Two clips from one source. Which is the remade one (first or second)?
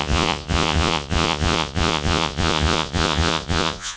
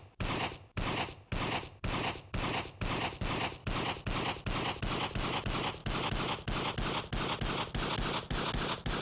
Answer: first